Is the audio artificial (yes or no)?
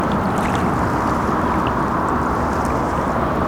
no